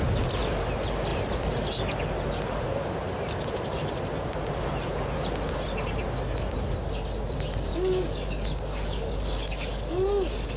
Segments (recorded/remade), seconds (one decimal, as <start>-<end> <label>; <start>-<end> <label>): 0.0-7.7 recorded; 7.7-10.6 remade